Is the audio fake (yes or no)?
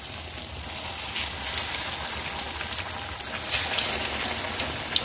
no